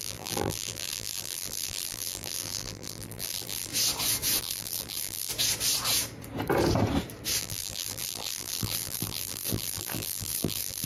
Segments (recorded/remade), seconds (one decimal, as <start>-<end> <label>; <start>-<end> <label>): 0.0-3.7 remade; 3.7-4.4 recorded; 4.4-5.3 remade; 5.3-7.4 recorded; 7.4-10.9 remade